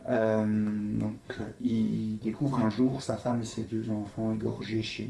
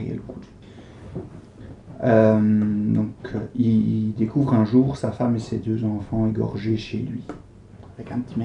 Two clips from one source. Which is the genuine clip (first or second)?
second